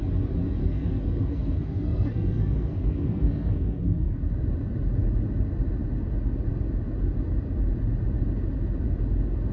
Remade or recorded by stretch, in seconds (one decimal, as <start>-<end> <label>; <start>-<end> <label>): 0.0-0.6 recorded; 0.6-4.2 remade; 4.2-9.5 recorded